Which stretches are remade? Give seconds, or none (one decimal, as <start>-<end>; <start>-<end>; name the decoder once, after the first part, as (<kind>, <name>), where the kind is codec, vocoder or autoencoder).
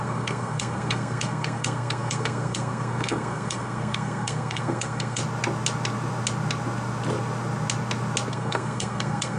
0.0-5.2 (codec, SNAC); 8.3-9.4